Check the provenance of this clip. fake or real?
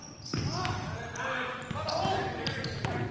fake